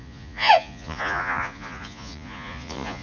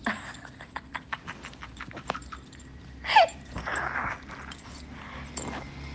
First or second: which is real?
second